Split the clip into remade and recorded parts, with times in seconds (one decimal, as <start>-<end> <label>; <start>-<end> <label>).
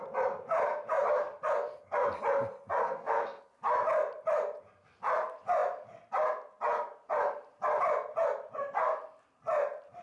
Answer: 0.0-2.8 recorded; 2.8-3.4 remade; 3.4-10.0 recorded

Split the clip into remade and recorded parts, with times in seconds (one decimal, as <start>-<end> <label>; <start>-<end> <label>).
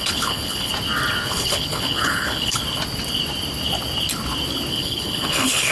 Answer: 0.0-0.7 remade; 0.7-1.3 recorded; 1.3-2.6 remade; 2.6-4.7 recorded; 4.7-5.7 remade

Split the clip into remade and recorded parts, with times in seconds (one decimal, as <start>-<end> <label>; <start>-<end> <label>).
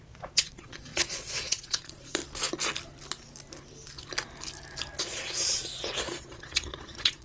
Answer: 0.0-2.2 remade; 2.2-5.0 recorded; 5.0-7.2 remade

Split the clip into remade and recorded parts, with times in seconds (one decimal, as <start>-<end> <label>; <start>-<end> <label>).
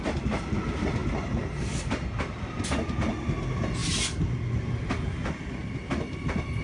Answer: 0.0-6.6 recorded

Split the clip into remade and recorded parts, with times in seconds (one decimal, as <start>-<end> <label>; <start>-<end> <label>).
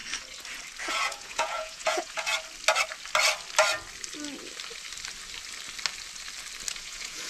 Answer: 0.0-0.8 recorded; 0.8-2.3 remade; 2.3-6.7 recorded; 6.7-7.3 remade